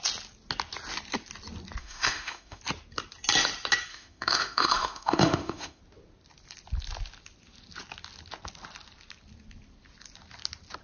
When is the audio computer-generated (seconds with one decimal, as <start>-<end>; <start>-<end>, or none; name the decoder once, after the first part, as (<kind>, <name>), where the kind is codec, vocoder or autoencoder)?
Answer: 1.8-2.6 (autoencoder, DAC-VAE); 3.9-5.8